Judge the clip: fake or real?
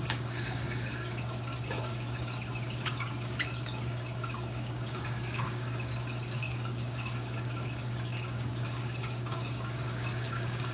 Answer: fake